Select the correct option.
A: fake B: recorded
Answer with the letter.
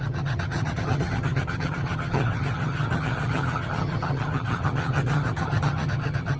A